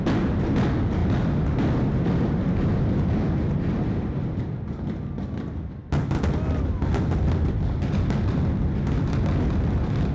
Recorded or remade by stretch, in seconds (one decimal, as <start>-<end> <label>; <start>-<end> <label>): 0.0-10.1 recorded